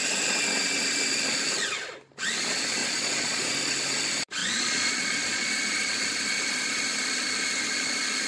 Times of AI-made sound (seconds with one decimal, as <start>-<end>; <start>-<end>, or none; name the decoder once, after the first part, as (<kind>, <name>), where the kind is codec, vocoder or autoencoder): 2.8-3.5 (vocoder, Vocos); 4.4-5.5